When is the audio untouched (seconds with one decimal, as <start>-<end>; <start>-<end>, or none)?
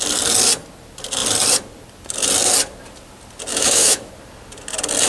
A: 0.0-3.5; 4.1-5.1